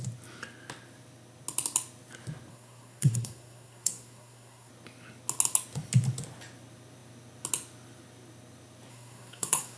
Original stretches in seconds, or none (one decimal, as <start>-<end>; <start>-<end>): 0.0-2.5; 4.7-8.9